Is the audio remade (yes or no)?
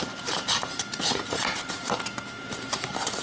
yes